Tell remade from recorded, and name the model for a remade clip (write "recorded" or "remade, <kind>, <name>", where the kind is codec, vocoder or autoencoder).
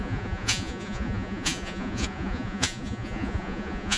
remade, vocoder, Vocos